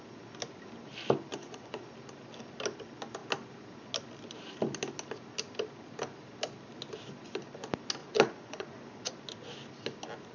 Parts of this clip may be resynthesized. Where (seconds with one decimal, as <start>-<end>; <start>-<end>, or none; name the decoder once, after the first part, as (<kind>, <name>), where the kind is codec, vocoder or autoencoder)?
1.3-1.9 (vocoder, Vocos); 8.0-9.1